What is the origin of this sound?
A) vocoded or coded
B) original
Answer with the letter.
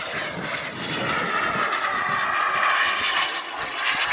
B